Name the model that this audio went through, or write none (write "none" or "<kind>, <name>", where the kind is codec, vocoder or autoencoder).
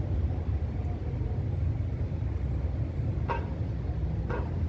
none